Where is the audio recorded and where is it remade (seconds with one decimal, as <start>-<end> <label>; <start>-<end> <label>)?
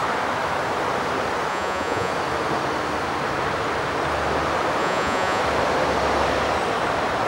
0.0-1.5 recorded; 1.5-2.1 remade; 2.1-4.8 recorded; 4.8-5.4 remade; 5.4-7.3 recorded